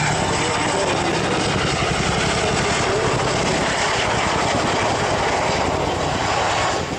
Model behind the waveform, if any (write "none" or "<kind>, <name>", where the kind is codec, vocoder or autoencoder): none